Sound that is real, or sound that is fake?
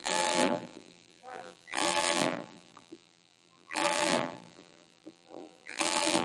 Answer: fake